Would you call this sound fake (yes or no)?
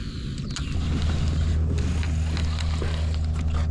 no